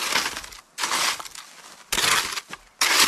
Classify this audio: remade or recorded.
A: recorded